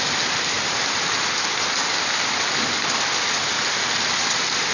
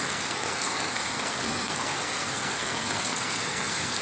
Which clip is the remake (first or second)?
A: second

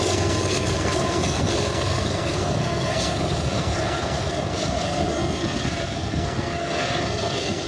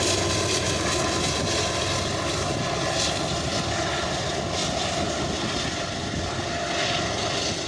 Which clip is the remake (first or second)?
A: first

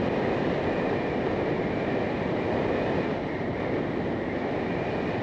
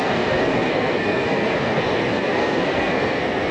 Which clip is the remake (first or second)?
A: second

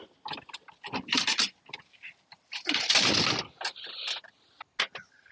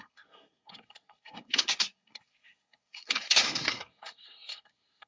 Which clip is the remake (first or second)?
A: second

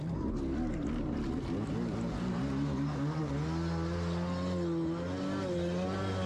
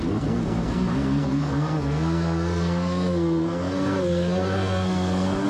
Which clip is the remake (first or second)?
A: second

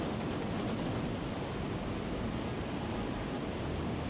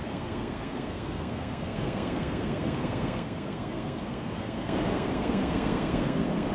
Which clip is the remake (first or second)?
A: second